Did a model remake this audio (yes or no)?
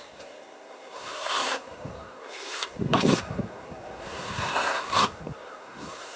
yes